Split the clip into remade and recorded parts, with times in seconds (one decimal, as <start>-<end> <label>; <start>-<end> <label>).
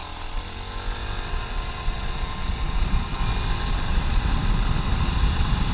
0.0-1.3 recorded; 1.3-3.2 remade; 3.2-3.7 recorded; 3.7-4.4 remade; 4.4-5.0 recorded; 5.0-5.7 remade